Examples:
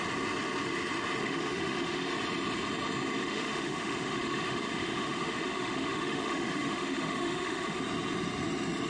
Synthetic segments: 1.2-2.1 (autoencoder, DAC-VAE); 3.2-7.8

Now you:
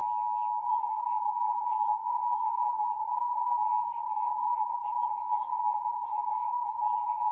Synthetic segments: 0.6-7.3 (codec, SNAC)

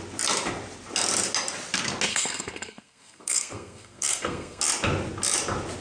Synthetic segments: 2.1-4.6 (codec, SNAC)